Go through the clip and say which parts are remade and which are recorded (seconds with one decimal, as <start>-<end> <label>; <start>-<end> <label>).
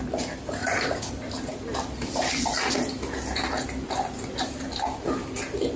0.0-0.6 recorded; 0.6-1.1 remade; 1.1-5.8 recorded